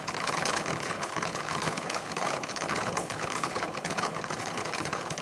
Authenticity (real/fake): fake